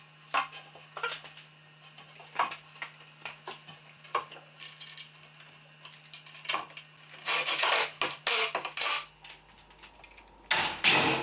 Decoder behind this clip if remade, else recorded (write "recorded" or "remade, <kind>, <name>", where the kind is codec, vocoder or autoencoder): recorded